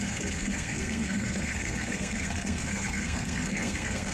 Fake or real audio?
fake